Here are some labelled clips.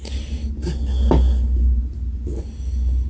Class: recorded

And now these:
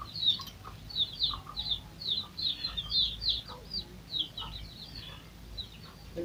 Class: recorded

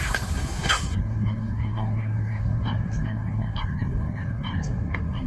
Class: remade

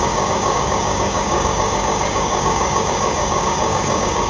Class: remade